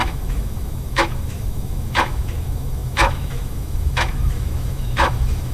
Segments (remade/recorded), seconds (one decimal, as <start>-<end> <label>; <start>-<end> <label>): 0.0-5.5 remade